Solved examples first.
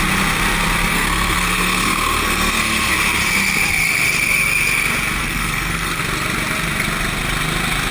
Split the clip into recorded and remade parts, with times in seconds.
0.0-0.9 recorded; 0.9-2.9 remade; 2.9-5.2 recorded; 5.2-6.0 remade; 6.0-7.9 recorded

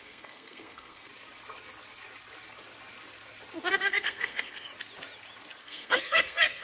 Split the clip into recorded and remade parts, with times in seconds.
0.0-1.1 remade; 1.1-3.7 recorded; 3.7-4.7 remade; 4.7-5.6 recorded; 5.6-6.6 remade

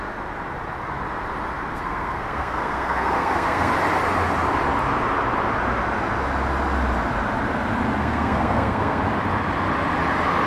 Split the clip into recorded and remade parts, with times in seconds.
0.0-1.7 recorded; 1.7-3.7 remade; 3.7-8.0 recorded; 8.0-9.0 remade; 9.0-10.5 recorded

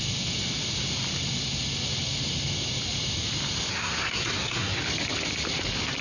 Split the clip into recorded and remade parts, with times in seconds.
0.0-3.7 recorded; 3.7-4.8 remade; 4.8-6.0 recorded